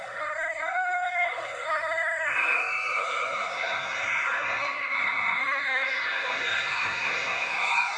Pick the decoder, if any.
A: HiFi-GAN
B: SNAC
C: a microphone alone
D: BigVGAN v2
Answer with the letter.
B